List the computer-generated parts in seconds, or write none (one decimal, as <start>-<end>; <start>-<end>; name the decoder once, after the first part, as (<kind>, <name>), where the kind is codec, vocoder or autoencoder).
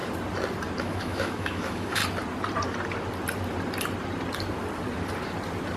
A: 0.8-2.0 (autoencoder, DAC-VAE)